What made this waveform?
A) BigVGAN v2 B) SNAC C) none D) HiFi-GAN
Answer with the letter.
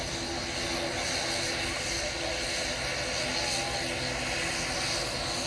C